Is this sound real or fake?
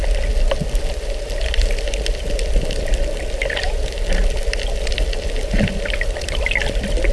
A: real